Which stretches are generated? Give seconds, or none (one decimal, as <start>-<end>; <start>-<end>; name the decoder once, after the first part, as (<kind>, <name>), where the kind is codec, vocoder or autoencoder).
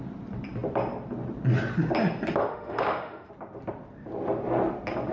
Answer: 2.4-3.3 (autoencoder, DAC-VAE)